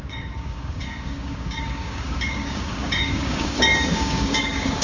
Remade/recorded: remade